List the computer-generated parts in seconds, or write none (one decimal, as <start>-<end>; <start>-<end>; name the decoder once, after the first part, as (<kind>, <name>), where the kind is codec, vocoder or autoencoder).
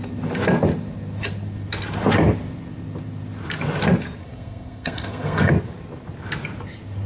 4.2-5.5 (codec, SNAC)